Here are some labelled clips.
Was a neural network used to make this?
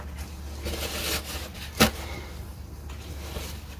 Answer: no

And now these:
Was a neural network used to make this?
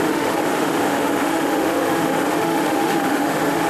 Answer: yes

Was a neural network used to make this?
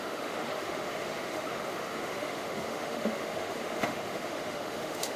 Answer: yes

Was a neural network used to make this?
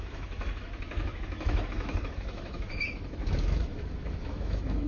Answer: yes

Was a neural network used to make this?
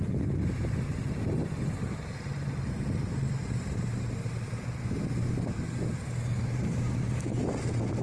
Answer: no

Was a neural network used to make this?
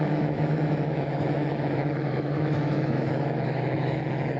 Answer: yes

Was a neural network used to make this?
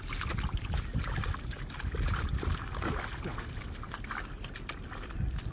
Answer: no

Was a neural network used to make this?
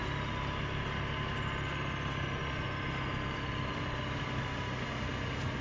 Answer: no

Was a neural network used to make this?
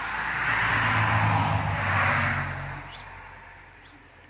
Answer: no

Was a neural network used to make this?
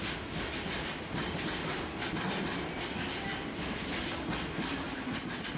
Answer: no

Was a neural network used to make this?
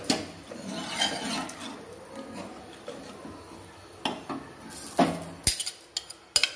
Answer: no